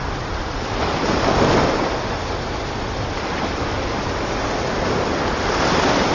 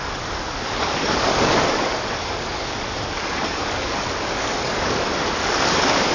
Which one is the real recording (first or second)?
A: first